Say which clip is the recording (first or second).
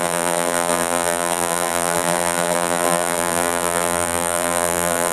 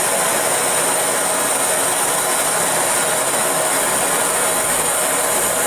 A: second